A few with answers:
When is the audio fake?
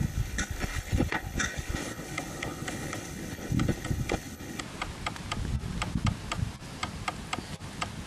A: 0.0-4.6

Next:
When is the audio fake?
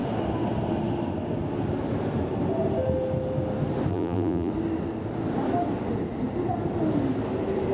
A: 3.9-4.5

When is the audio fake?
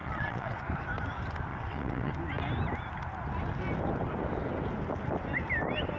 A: 0.0-0.6; 1.5-2.1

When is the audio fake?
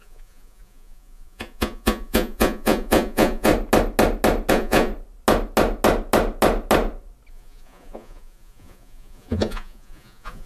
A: 0.0-3.5; 4.5-4.9; 7.3-10.5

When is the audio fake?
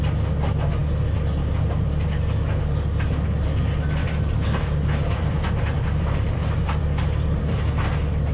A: 4.0-7.7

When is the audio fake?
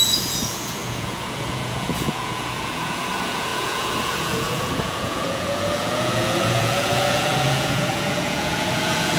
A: 0.0-9.2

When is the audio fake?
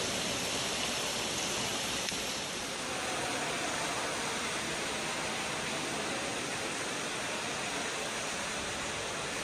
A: 1.7-2.6